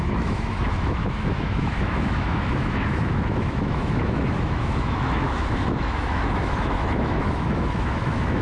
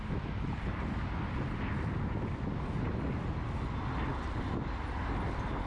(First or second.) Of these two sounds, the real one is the second